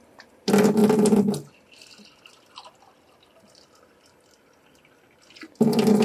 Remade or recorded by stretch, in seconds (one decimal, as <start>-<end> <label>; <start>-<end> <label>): 0.0-6.0 recorded